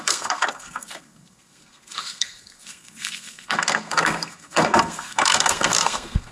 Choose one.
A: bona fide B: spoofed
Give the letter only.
B